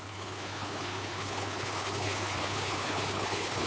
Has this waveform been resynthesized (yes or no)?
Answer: yes